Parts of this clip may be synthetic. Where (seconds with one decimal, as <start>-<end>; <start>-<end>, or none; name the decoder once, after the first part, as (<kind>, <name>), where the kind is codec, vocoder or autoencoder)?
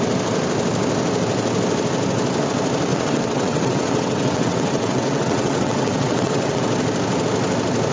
2.9-6.6 (vocoder, WaveNeXt)